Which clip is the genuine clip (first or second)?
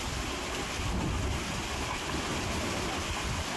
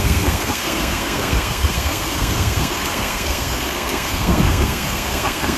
first